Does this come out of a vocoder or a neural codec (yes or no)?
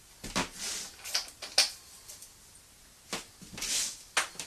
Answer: no